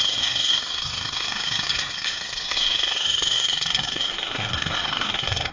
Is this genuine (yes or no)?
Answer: no